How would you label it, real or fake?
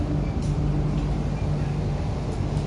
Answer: real